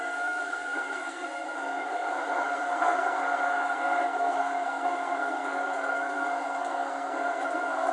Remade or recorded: remade